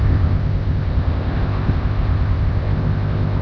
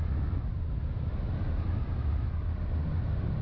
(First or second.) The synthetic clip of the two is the first